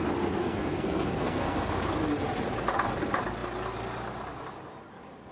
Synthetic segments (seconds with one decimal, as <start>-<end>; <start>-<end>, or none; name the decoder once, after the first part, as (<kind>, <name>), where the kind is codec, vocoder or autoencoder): 0.4-1.7 (codec, SNAC)